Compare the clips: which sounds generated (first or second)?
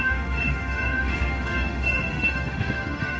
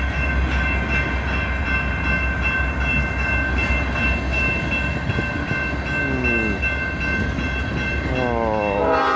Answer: first